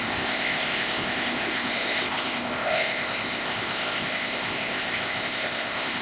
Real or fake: fake